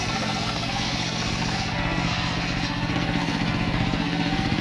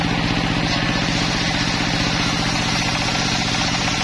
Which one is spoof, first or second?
first